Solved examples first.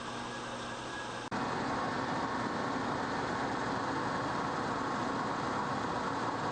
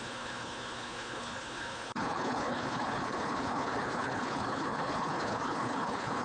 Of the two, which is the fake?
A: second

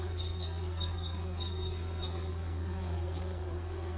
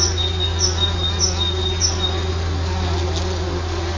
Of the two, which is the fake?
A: first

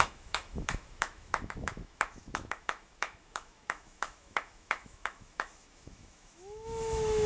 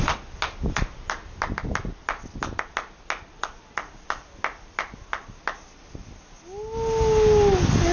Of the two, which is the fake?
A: first